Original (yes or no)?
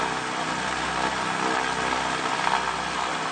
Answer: yes